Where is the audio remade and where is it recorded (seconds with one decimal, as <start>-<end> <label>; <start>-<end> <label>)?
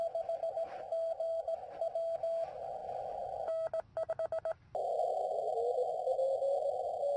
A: 0.0-1.8 remade; 1.8-7.2 recorded